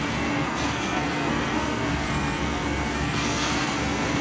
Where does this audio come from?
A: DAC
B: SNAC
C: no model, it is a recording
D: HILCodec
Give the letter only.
B